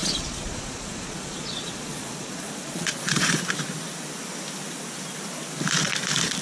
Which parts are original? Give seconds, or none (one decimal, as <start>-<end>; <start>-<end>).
3.4-6.4